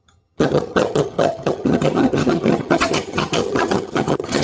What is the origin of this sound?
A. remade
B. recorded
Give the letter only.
A